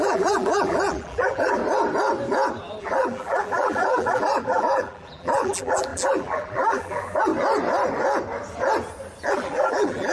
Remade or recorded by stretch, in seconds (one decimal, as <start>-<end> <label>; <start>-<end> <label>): 0.0-1.6 remade; 1.6-2.8 recorded; 2.8-7.3 remade; 7.3-9.3 recorded; 9.3-10.1 remade